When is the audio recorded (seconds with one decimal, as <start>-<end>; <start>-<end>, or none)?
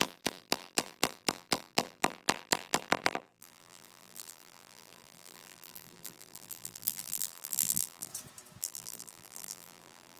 8.1-8.6